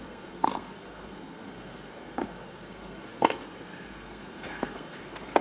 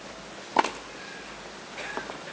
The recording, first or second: second